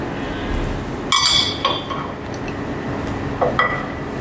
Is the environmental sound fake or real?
real